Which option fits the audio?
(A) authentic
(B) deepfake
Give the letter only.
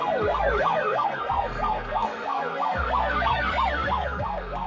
B